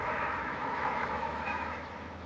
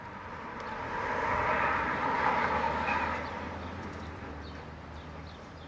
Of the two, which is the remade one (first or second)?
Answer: first